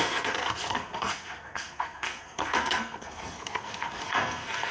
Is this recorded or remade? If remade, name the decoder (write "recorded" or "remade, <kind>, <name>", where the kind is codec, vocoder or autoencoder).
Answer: remade, codec, SNAC